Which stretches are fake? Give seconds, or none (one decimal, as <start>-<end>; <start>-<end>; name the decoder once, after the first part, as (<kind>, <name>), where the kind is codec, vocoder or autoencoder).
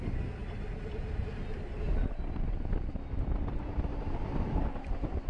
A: none